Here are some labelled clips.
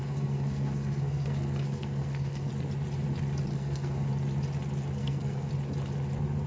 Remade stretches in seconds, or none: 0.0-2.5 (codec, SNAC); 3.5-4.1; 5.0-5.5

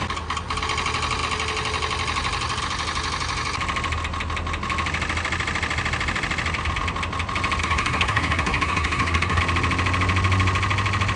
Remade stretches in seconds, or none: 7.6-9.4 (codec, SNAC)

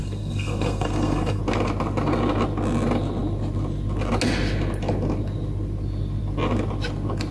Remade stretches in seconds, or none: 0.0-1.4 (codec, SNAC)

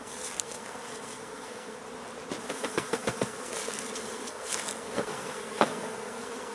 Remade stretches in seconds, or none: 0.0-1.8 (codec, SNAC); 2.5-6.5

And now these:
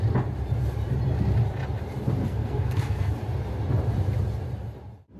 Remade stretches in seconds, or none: 2.2-3.1 (codec, SNAC)

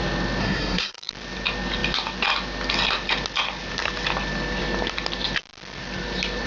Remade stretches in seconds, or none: 0.4-1.1 (codec, SNAC)